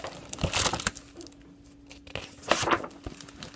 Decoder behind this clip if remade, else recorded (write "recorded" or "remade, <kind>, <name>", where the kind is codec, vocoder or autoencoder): recorded